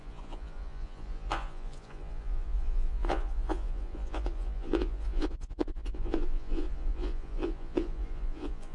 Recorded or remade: remade